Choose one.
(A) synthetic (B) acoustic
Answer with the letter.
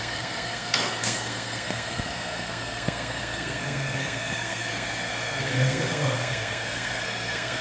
A